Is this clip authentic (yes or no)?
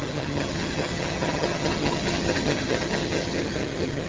no